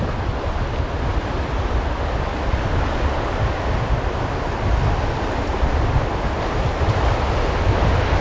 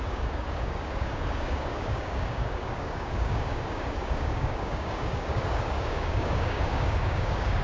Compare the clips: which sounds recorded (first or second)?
first